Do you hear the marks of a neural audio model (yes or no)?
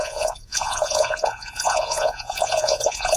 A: yes